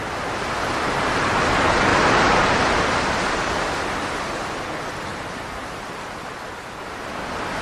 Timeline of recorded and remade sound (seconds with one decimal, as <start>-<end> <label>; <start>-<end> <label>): 0.0-1.9 recorded; 1.9-3.7 remade; 3.7-5.1 recorded; 5.1-5.9 remade; 5.9-7.6 recorded